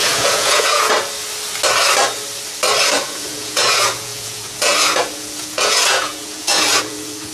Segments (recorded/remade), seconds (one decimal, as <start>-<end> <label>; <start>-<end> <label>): 0.0-0.9 remade; 0.9-2.9 recorded; 2.9-7.3 remade